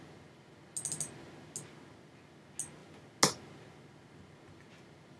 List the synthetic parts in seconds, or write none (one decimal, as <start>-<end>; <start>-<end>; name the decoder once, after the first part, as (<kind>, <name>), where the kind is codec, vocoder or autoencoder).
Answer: none